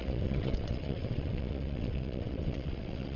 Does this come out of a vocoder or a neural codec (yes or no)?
yes